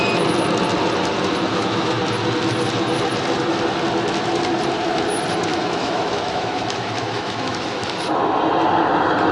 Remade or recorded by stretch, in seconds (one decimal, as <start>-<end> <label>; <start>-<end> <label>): 0.0-1.5 recorded; 1.5-2.0 remade; 2.0-5.5 recorded; 5.5-8.2 remade; 8.2-9.3 recorded